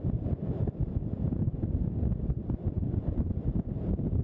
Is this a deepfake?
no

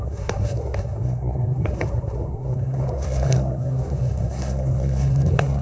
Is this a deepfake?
yes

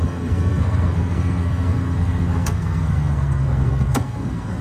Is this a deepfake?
yes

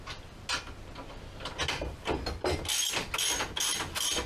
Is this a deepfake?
no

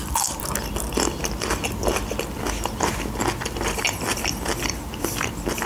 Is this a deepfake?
no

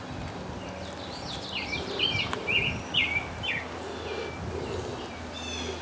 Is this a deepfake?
no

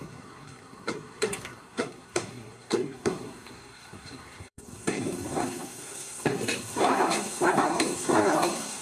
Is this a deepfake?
yes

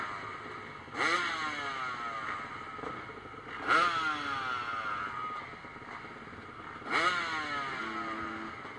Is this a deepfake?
no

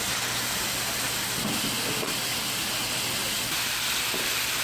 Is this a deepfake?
no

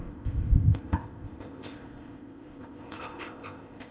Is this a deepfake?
yes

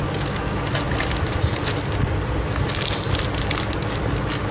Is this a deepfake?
no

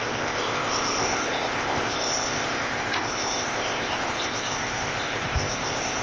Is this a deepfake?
yes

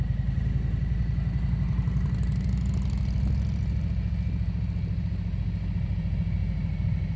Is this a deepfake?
no